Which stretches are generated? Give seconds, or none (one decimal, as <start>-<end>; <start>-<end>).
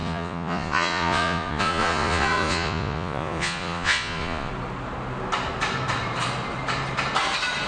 0.0-4.5